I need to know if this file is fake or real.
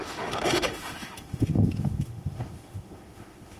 fake